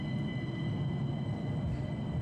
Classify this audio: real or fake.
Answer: real